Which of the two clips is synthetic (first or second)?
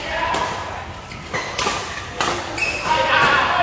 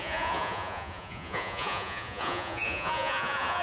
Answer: second